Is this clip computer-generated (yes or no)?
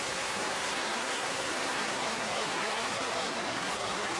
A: yes